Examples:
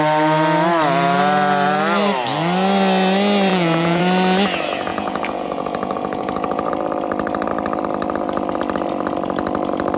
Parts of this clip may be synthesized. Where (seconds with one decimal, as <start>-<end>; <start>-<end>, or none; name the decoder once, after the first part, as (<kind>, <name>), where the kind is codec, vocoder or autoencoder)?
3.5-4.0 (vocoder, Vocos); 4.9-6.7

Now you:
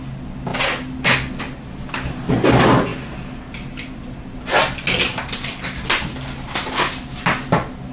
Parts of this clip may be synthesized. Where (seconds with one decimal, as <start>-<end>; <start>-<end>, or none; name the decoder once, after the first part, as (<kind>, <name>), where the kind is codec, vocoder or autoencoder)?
none

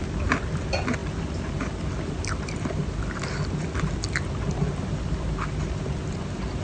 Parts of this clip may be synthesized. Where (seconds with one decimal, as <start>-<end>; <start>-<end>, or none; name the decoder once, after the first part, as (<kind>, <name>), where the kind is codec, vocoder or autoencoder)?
none

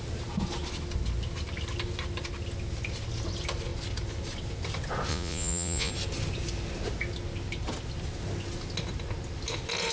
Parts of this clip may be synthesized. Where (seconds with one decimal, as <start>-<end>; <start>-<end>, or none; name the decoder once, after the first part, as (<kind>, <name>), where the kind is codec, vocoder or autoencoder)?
5.1-5.9 (vocoder, Vocos)

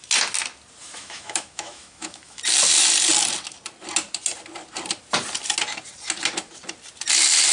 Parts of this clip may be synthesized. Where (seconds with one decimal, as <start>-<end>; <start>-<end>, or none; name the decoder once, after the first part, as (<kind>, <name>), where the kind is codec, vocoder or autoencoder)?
0.8-2.4 (autoencoder, DAC-VAE)